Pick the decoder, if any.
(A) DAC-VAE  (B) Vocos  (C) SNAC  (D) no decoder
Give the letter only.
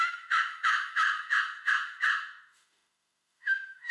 A